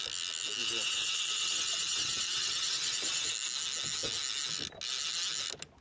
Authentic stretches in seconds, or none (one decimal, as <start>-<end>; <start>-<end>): 0.0-0.6; 3.3-5.8